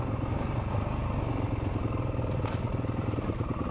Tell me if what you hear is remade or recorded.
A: recorded